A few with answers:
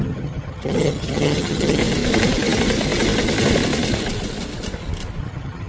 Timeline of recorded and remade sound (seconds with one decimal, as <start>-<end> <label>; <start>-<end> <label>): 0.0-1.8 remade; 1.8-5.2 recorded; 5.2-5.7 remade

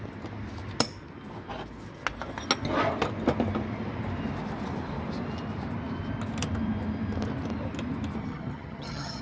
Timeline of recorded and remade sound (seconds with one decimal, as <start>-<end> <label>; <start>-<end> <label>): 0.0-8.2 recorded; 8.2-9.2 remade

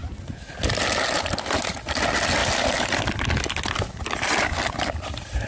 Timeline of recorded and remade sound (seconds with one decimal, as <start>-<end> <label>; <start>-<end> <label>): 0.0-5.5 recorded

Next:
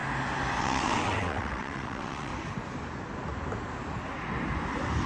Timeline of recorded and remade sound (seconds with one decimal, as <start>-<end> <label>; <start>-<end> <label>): 0.0-0.6 recorded; 0.6-2.3 remade; 2.3-5.1 recorded

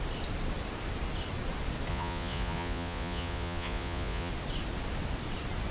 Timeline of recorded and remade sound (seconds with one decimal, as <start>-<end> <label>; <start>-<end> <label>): 0.0-1.9 recorded; 1.9-4.3 remade; 4.3-5.7 recorded

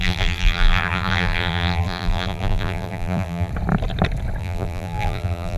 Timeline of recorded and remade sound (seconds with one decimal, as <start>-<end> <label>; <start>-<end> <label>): 0.0-3.5 remade; 3.5-4.4 recorded; 4.4-5.6 remade